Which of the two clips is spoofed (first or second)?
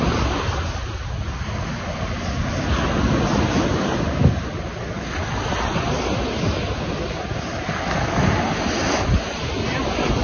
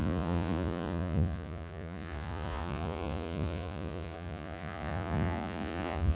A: second